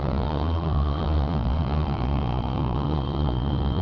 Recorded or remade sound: remade